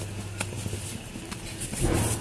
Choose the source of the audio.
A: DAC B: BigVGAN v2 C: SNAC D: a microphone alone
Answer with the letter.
D